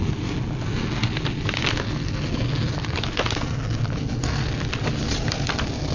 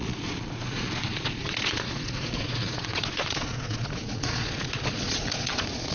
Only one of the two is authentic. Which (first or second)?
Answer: first